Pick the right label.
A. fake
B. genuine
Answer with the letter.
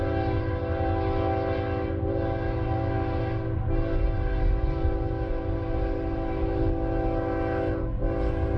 B